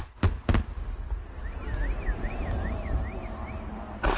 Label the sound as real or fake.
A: real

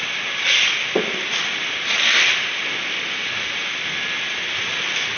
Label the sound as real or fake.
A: real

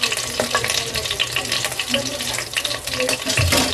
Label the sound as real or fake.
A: real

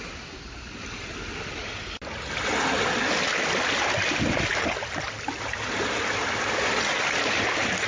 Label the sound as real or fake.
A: real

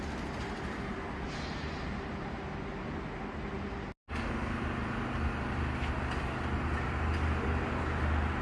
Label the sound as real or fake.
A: real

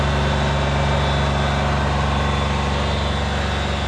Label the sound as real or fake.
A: real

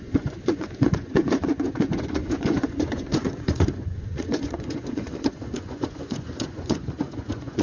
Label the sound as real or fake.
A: fake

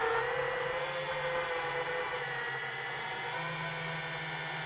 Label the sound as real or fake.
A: real